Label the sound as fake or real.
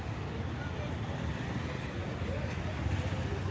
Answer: real